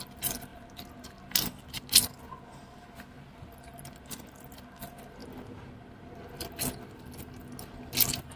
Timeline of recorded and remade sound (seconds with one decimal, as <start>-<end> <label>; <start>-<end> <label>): 0.0-8.4 recorded